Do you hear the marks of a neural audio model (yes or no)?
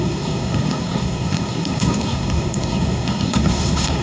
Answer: yes